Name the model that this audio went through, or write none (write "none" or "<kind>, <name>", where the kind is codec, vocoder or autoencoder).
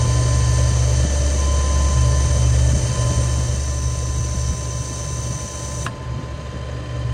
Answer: none